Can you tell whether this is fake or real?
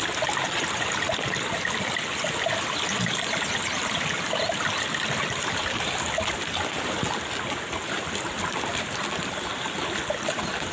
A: real